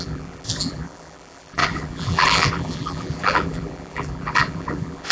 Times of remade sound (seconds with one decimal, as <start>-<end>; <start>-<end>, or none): 0.0-5.1